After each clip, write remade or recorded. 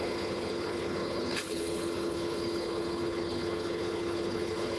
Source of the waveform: remade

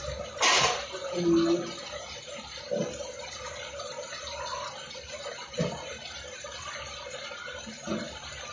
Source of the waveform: recorded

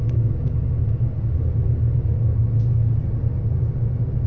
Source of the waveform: recorded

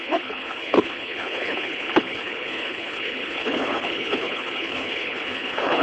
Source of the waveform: remade